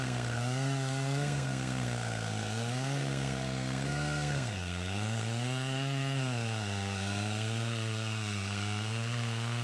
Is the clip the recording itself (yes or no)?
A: no